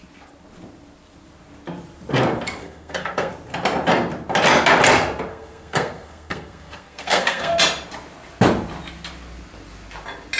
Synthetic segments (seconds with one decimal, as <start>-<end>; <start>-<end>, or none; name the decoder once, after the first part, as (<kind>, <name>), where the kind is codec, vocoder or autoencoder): 2.6-3.3 (codec, SNAC); 5.3-7.5